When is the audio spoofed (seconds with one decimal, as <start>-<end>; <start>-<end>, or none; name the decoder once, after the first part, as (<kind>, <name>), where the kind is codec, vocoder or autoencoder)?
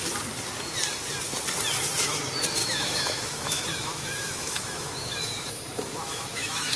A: 2.6-6.8 (autoencoder, DAC-VAE)